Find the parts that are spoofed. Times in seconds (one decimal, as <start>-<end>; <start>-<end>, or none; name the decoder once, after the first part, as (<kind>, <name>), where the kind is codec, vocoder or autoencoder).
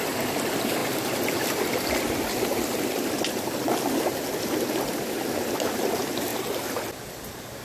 none